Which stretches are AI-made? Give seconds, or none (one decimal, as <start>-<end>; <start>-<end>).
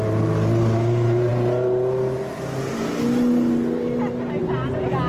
none